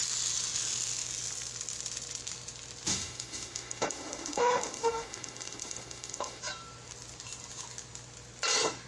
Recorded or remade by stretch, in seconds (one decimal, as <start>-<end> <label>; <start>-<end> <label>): 0.0-2.9 recorded; 2.9-6.4 remade; 6.4-8.9 recorded